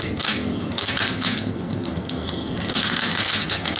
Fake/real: fake